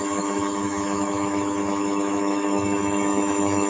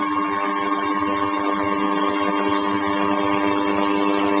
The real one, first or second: second